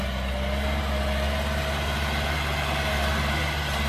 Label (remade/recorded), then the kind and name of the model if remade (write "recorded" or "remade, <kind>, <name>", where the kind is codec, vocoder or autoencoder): recorded